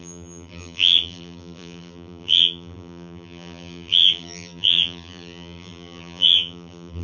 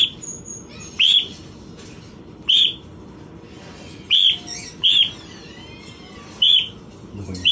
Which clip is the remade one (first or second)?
first